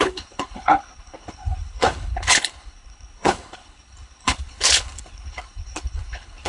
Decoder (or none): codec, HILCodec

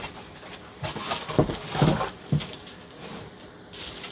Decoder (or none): none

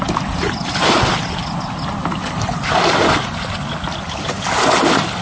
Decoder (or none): none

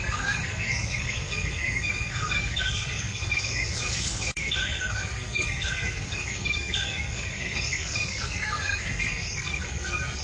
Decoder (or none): codec, SNAC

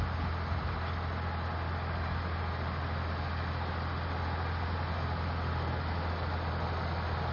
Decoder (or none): none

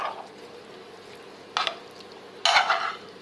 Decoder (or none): none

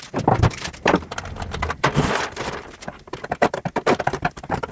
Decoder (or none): vocoder, BigVGAN v2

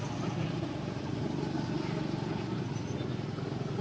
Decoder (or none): none